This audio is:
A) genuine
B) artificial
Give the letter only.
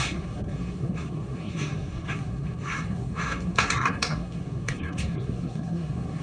B